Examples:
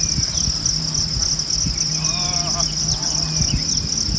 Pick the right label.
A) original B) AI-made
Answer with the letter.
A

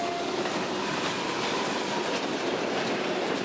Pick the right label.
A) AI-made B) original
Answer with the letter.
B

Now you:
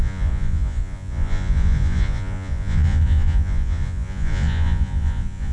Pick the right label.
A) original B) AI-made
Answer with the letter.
B